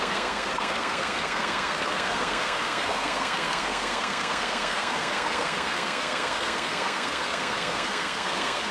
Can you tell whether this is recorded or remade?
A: remade